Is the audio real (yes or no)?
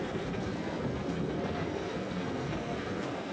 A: no